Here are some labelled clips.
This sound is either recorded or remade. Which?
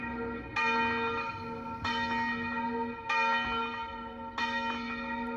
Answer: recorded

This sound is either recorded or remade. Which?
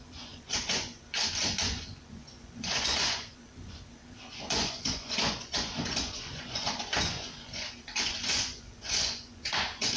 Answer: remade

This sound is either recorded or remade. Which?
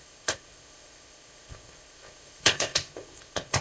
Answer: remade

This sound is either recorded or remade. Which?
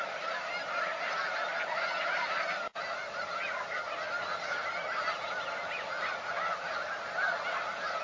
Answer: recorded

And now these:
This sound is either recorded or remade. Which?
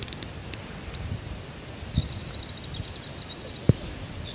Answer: recorded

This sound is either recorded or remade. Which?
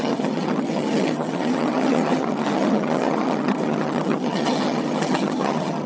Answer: remade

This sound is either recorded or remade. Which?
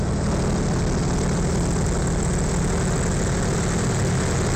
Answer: recorded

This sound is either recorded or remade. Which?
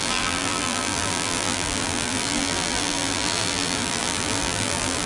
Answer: remade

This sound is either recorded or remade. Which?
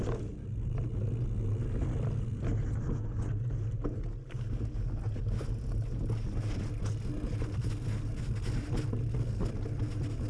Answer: recorded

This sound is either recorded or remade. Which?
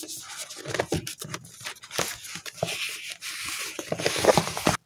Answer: recorded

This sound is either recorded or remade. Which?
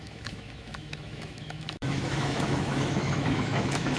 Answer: remade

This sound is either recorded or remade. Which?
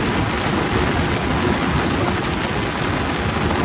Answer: recorded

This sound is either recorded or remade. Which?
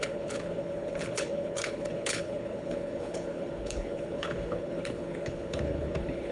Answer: remade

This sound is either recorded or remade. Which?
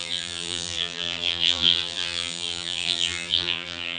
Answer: remade